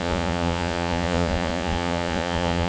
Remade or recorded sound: remade